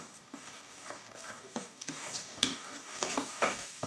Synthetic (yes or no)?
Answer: yes